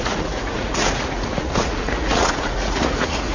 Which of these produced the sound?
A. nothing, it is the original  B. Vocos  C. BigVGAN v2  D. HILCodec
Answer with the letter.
B